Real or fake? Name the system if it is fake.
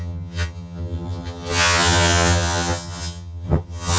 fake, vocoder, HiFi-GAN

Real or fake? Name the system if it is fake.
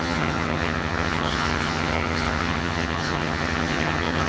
fake, vocoder, HiFi-GAN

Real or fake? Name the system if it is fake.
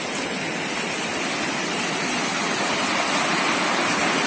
real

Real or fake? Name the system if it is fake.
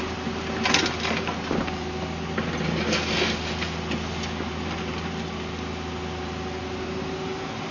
real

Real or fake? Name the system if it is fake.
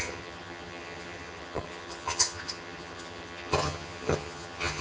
fake, vocoder, HiFi-GAN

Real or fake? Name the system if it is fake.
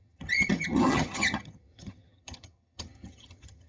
fake, vocoder, HiFi-GAN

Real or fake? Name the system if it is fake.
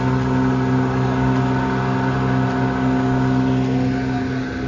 real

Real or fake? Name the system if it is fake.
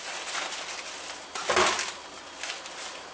real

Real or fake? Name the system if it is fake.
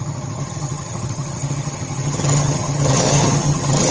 fake, vocoder, HiFi-GAN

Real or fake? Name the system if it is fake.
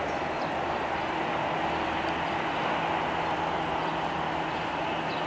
real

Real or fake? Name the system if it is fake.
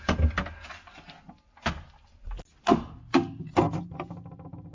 real